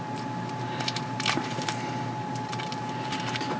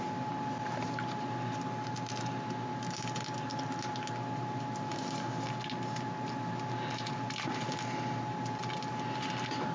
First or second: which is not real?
first